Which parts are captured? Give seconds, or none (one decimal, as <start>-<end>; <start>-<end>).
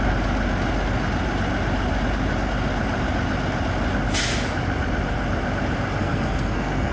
0.0-6.0